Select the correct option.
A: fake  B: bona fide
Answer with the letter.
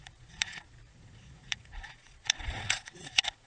A